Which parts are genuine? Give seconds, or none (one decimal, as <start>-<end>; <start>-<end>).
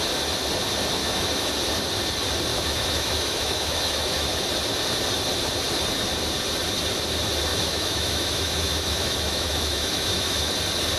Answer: 0.0-1.0; 1.5-2.5; 4.5-7.5; 10.5-11.0